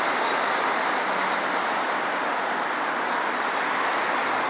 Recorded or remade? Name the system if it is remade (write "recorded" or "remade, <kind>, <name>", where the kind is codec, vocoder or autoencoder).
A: recorded